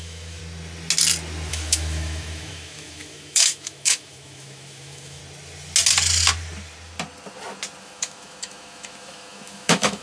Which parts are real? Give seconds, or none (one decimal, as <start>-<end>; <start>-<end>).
0.4-1.5; 5.2-7.8